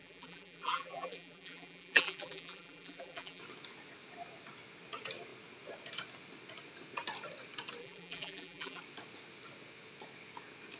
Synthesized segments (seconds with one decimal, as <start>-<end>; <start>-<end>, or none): 0.0-3.4; 7.8-8.8

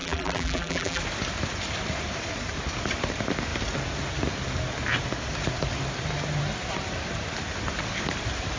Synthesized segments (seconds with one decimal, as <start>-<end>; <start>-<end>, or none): 0.0-1.0